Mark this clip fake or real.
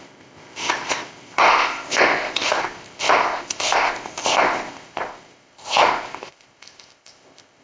fake